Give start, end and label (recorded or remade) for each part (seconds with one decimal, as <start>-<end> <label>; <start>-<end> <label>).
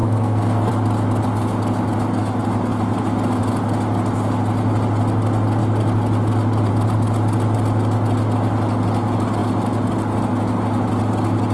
0.0-0.7 remade; 0.7-11.5 recorded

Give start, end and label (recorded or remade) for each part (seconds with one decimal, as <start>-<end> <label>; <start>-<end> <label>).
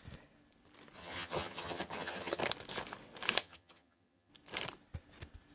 0.0-1.0 recorded; 1.0-2.4 remade; 2.4-3.4 recorded; 3.4-4.3 remade; 4.3-5.5 recorded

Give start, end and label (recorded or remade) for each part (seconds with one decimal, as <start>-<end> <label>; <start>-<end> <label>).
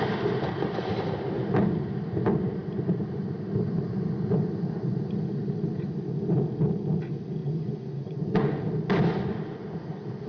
0.0-7.4 recorded; 7.4-8.7 remade; 8.7-10.3 recorded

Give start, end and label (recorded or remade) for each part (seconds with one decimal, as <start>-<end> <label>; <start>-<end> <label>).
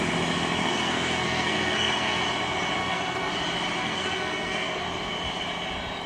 0.0-0.6 recorded; 0.6-2.2 remade; 2.2-2.8 recorded; 2.8-3.3 remade; 3.3-3.8 recorded; 3.8-4.8 remade; 4.8-6.1 recorded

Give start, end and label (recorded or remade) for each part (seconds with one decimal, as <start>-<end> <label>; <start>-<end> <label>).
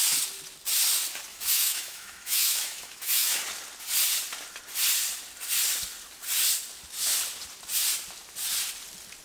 0.0-1.3 recorded; 1.3-3.4 remade; 3.4-9.2 recorded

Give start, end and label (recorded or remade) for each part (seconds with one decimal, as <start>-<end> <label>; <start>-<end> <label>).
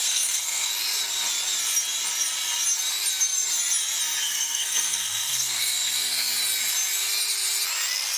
0.0-0.7 remade; 0.7-4.3 recorded; 4.3-6.3 remade; 6.3-8.2 recorded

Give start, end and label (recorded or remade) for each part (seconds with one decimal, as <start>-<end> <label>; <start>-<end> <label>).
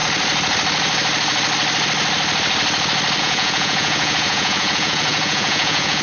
0.0-3.2 recorded; 3.2-6.0 remade